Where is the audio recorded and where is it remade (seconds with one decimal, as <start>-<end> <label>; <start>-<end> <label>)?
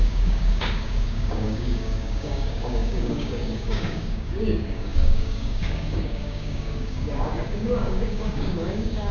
0.0-9.1 remade